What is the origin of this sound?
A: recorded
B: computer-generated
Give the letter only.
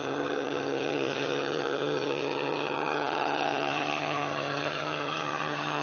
B